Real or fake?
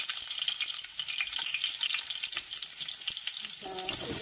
real